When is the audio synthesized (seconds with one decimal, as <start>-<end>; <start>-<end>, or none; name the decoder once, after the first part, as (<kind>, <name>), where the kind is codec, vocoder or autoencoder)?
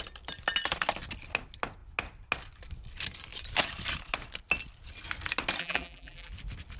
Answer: 5.6-6.3 (vocoder, BigVGAN v2)